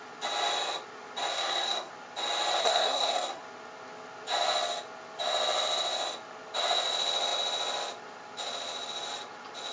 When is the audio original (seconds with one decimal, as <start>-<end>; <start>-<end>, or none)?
0.0-1.3; 1.9-2.6; 3.4-9.7